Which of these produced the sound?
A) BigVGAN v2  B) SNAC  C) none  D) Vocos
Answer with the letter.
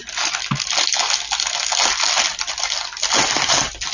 C